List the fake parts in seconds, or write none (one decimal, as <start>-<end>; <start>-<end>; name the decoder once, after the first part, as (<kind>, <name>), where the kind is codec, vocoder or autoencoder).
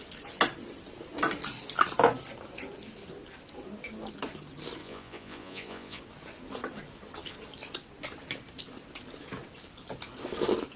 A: 4.8-6.0 (vocoder, Vocos)